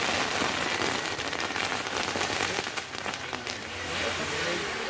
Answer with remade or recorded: recorded